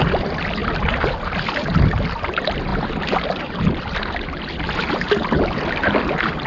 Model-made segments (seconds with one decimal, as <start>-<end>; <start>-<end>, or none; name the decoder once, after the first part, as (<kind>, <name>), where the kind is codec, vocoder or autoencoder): none